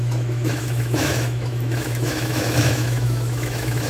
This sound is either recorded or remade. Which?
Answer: remade